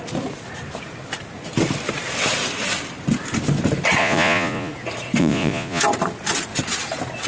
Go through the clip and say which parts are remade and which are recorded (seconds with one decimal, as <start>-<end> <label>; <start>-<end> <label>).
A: 0.0-4.0 recorded; 4.0-4.7 remade; 4.7-5.2 recorded; 5.2-5.8 remade; 5.8-7.3 recorded